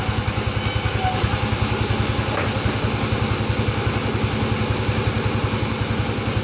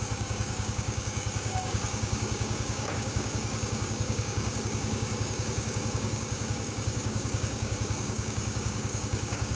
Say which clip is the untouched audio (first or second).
first